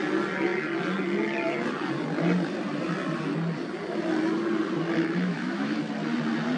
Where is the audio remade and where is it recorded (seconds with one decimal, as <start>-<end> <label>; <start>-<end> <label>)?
0.0-4.9 recorded; 4.9-5.8 remade; 5.8-6.6 recorded